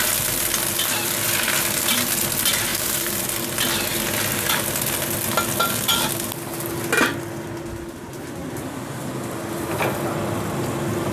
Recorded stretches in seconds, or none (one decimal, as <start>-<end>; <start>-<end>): 0.0-2.7; 3.2-8.4; 9.1-11.1